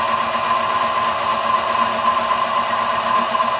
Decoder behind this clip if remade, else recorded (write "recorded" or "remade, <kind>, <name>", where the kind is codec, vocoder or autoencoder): recorded